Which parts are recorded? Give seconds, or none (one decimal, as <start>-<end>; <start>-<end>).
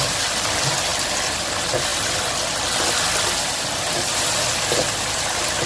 0.0-5.7